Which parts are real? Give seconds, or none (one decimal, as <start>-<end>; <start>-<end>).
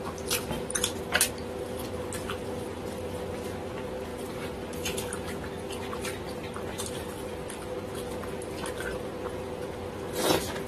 0.0-4.1; 5.3-10.7